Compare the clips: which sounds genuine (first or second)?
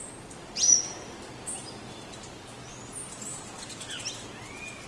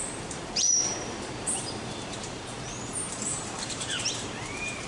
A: first